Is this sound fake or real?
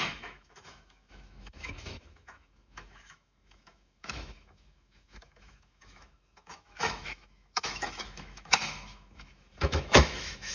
fake